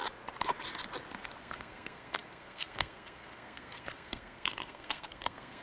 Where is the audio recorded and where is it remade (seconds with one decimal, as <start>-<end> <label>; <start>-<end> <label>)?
0.0-1.4 recorded; 1.4-5.6 remade